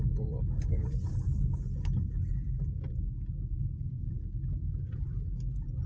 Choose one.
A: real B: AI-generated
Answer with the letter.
A